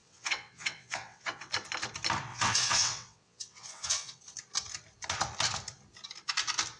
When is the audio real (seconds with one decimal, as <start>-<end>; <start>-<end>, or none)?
1.5-2.3; 4.2-6.8